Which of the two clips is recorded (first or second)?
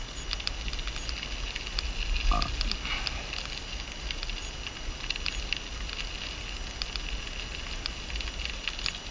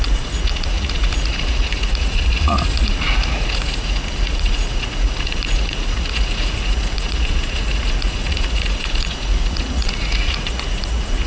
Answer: first